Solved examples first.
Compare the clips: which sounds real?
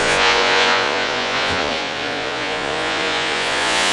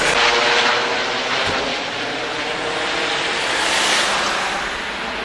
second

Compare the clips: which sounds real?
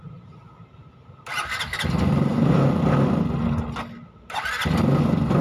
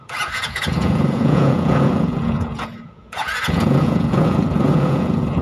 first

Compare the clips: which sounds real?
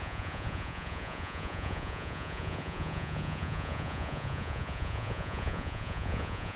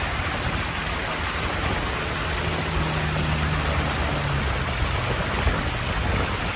second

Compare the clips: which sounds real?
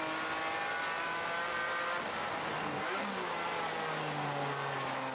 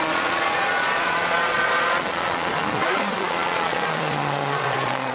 first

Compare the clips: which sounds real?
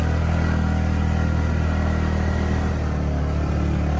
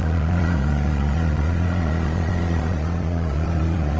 first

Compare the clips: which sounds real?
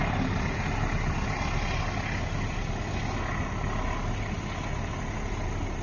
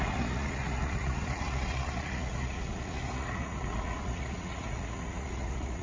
first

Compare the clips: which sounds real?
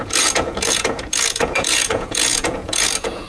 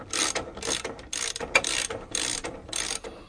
second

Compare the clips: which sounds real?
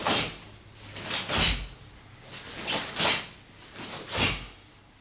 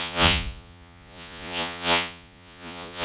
first